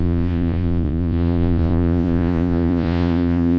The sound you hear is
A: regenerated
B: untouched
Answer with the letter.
A